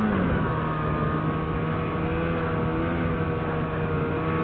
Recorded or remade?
recorded